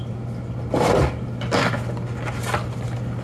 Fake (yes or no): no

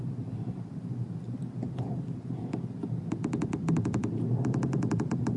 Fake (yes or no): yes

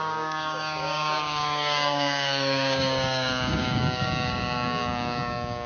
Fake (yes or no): yes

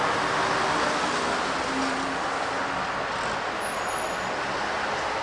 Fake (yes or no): no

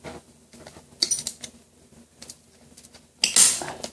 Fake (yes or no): no